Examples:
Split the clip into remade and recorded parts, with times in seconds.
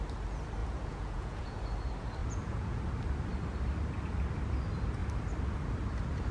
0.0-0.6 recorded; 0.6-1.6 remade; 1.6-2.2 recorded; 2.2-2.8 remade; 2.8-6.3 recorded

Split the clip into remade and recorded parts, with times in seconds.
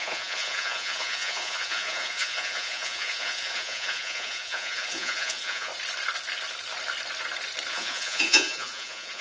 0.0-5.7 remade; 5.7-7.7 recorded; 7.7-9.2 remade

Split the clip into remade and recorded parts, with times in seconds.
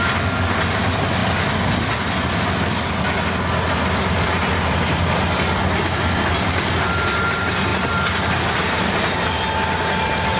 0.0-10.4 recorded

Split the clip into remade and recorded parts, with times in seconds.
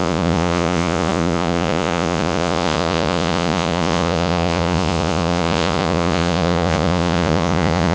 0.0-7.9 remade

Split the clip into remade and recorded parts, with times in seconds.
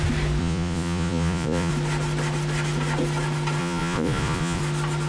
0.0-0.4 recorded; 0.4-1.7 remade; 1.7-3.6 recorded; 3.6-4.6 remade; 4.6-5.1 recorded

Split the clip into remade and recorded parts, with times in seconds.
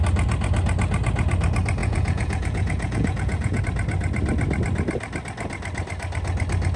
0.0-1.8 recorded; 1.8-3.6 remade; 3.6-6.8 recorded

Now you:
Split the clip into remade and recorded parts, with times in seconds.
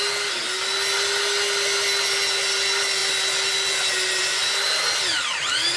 0.0-5.8 recorded